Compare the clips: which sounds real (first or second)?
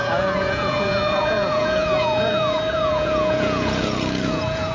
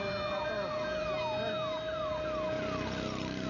second